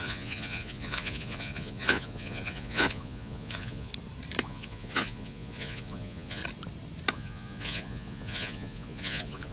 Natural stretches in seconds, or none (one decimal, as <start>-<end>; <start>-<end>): 3.9-4.4; 6.4-7.1